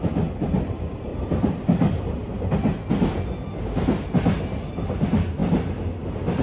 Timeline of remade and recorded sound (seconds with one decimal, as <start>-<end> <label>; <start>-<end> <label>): 0.0-1.1 recorded; 1.1-2.3 remade; 2.3-6.4 recorded